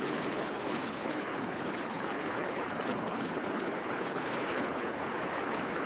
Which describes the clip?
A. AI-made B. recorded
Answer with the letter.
A